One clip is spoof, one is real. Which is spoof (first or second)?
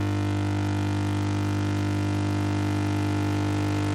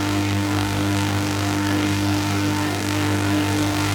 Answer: second